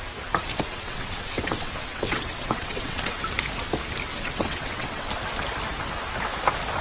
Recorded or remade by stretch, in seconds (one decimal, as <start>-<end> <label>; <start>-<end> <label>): 0.0-0.7 recorded; 0.7-3.2 remade; 3.2-4.1 recorded; 4.1-5.1 remade; 5.1-6.8 recorded